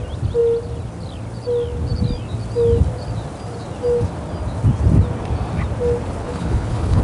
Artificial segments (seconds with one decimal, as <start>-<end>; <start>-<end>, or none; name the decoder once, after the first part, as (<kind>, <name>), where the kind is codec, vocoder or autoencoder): 6.2-7.0 (codec, HILCodec)